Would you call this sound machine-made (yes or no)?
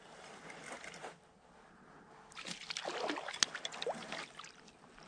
no